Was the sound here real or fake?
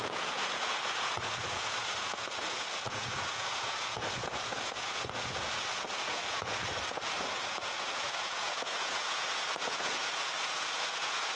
fake